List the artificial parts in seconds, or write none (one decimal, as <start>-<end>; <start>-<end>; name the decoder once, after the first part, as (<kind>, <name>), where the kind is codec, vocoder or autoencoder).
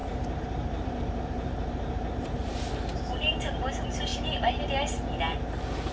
0.0-2.7 (vocoder, BigVGAN v2)